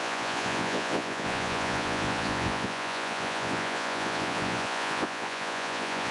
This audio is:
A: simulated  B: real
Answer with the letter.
A